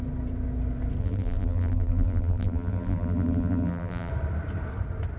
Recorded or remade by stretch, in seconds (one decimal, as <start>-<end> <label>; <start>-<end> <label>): 0.0-1.0 recorded; 1.0-4.1 remade; 4.1-5.2 recorded